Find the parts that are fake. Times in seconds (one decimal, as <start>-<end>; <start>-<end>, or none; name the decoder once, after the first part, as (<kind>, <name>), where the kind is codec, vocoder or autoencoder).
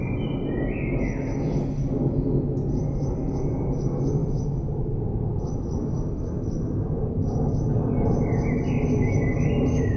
none